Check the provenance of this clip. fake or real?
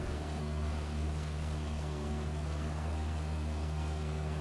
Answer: fake